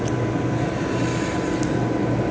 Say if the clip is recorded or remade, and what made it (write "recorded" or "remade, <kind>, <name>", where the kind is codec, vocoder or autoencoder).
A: recorded